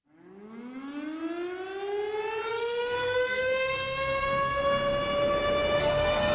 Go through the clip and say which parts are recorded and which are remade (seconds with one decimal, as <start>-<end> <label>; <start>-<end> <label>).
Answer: 0.0-2.5 recorded; 2.5-4.6 remade; 4.6-5.8 recorded; 5.8-6.3 remade

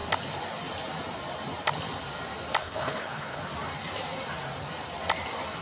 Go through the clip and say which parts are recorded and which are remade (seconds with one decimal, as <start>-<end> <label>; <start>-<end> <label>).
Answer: 0.0-2.6 recorded; 2.6-3.4 remade; 3.4-5.6 recorded

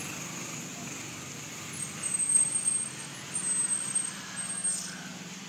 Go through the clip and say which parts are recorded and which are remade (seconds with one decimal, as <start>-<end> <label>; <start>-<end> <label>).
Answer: 0.0-2.4 remade; 2.4-4.9 recorded; 4.9-5.5 remade

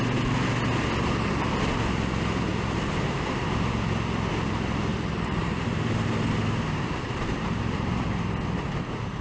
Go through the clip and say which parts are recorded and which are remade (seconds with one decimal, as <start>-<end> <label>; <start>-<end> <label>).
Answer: 0.0-2.5 recorded; 2.5-3.5 remade; 3.5-4.9 recorded; 4.9-9.2 remade

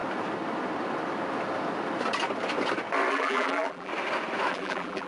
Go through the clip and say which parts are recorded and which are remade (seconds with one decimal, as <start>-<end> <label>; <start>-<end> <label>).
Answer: 0.0-3.1 recorded; 3.1-3.9 remade; 3.9-4.5 recorded; 4.5-5.1 remade

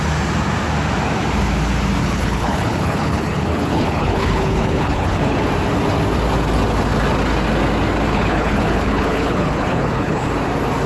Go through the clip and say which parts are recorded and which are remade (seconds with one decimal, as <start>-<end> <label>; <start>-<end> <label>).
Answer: 0.0-2.0 recorded; 2.0-5.5 remade; 5.5-8.1 recorded; 8.1-10.3 remade; 10.3-10.9 recorded